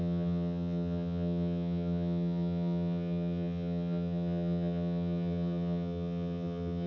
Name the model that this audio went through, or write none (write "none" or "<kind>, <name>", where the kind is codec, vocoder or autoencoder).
vocoder, HiFi-GAN